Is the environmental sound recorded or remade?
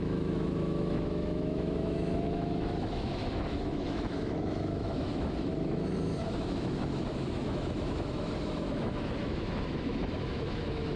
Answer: remade